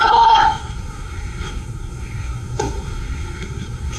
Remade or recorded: remade